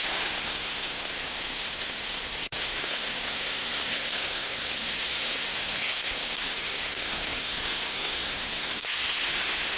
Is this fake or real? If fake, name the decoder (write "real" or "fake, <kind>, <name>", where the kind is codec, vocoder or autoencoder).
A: fake, codec, SNAC